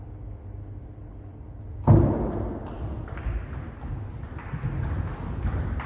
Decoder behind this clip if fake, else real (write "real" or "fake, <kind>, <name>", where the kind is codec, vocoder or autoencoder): real